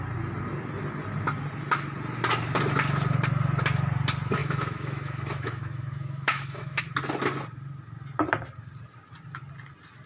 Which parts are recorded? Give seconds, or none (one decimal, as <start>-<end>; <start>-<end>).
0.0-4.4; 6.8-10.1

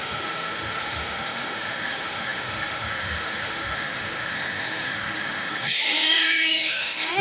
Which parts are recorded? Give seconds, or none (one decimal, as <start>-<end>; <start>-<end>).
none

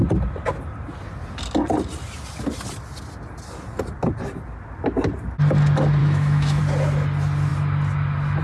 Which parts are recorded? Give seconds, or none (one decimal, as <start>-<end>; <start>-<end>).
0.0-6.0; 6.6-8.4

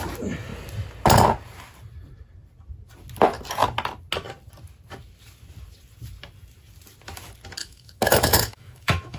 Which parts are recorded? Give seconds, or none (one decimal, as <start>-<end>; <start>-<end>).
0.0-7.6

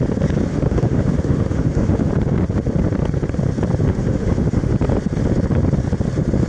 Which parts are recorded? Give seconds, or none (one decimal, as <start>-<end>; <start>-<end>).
0.0-0.5; 2.1-3.9; 4.7-6.5

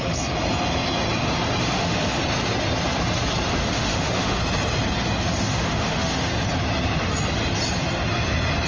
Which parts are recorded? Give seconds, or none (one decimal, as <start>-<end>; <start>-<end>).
0.0-1.6; 2.2-3.6; 4.4-5.4; 6.3-8.7